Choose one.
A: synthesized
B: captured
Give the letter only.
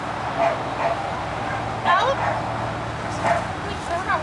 B